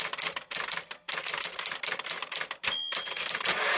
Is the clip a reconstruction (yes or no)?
no